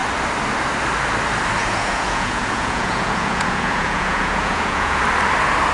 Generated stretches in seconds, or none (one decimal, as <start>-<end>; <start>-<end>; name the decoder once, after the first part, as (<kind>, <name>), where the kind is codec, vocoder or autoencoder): 1.6-5.0 (vocoder, Vocos)